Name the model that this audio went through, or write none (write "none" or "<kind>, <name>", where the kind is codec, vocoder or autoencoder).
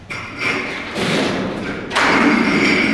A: vocoder, BigVGAN v2